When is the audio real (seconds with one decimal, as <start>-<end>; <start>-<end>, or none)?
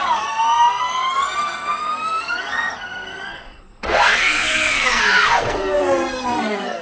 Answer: none